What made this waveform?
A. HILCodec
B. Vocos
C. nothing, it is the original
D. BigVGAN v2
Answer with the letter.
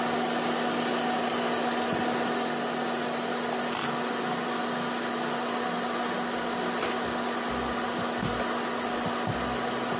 C